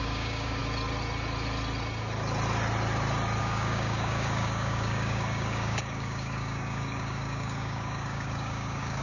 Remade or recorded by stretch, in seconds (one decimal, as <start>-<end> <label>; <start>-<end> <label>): 0.0-0.6 remade; 0.6-3.4 recorded; 3.4-9.0 remade